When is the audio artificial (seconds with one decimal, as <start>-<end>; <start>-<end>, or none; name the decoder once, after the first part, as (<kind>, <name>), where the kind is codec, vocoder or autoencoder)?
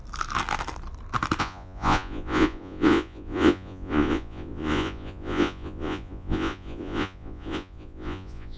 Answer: 1.4-8.6 (vocoder, Vocos)